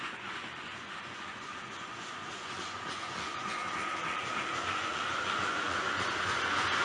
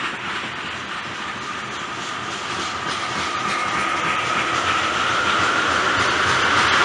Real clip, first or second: second